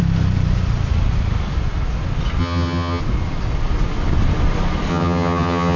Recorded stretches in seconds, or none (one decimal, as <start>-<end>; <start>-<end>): 0.0-2.4; 3.0-4.9